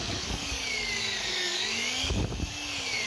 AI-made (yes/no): yes